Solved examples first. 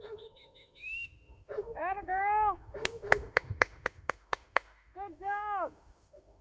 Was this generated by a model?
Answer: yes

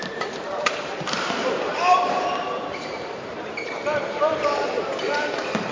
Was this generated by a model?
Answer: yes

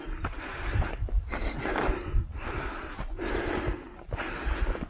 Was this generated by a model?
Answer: no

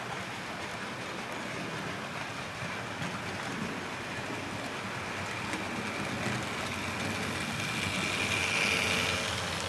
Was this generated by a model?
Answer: no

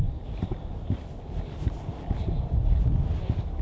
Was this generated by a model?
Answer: no